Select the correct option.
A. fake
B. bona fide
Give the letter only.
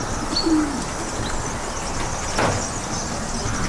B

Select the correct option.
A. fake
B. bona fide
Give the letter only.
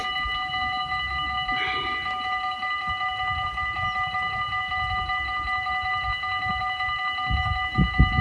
B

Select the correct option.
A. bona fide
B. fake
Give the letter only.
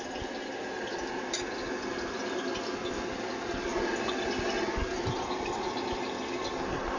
A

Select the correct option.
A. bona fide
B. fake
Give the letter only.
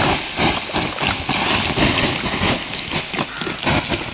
A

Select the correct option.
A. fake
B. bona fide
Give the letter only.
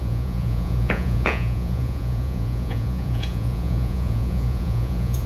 A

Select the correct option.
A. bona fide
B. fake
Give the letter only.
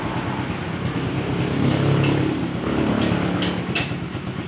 A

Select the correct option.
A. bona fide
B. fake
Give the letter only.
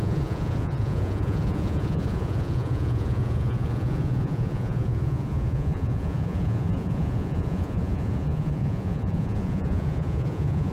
B